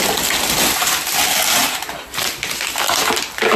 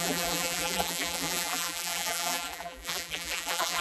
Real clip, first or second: first